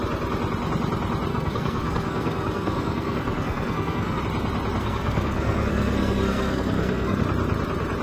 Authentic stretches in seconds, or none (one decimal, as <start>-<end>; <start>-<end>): 0.0-1.3; 4.2-4.8; 7.2-8.0